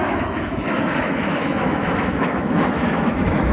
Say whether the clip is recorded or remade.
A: remade